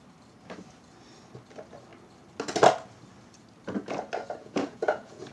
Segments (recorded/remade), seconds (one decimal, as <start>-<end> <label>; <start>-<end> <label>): 0.0-4.4 recorded; 4.4-5.3 remade